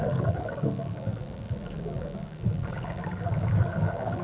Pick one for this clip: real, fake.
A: fake